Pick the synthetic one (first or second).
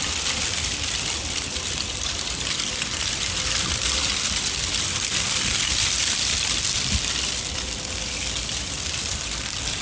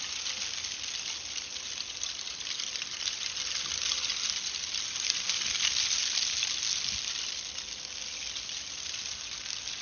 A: first